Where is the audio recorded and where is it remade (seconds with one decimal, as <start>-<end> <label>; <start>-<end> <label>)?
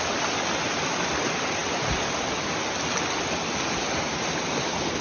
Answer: 0.0-5.0 recorded